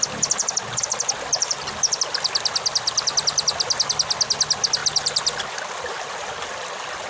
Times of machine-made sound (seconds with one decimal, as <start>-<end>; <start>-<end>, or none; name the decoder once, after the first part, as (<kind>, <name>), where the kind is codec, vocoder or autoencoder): 0.4-3.9 (vocoder, BigVGAN v2); 4.8-5.8